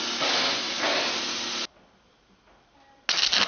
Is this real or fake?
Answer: real